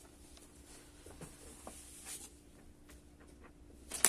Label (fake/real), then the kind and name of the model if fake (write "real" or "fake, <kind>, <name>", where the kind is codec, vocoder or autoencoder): real